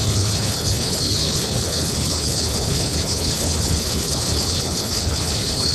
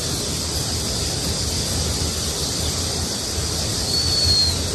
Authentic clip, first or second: second